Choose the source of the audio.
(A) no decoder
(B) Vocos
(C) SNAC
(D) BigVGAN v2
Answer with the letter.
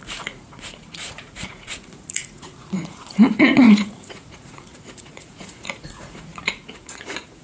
B